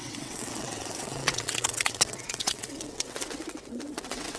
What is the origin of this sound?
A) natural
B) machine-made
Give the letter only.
B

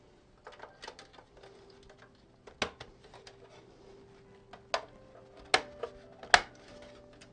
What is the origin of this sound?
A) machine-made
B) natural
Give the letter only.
B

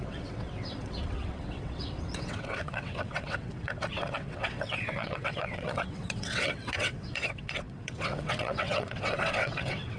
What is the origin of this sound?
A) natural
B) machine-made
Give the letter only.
B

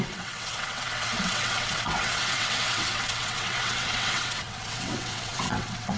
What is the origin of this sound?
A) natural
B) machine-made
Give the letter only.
B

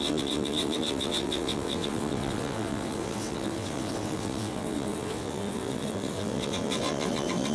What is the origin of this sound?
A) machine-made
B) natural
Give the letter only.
A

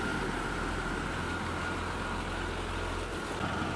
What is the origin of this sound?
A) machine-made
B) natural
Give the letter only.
B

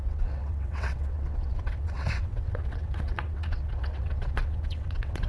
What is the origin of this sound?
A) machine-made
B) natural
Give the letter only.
A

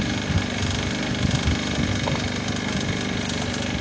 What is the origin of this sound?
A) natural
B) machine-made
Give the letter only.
A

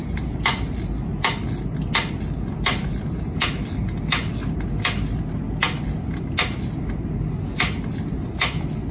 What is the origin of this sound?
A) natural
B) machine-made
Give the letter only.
A